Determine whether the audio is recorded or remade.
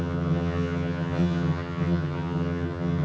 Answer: remade